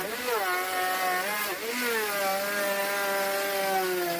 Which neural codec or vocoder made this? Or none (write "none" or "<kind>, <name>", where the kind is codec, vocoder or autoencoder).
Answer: none